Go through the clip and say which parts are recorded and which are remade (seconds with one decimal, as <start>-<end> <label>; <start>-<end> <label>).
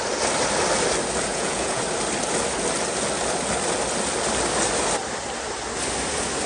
0.0-1.3 recorded; 1.3-1.8 remade; 1.8-6.5 recorded